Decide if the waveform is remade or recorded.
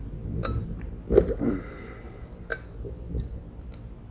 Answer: recorded